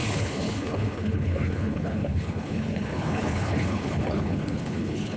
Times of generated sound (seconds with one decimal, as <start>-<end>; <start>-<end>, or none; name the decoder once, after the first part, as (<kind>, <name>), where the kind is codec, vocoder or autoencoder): 0.0-5.2 (codec, HILCodec)